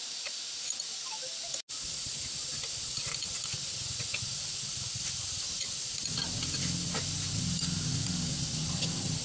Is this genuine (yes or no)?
yes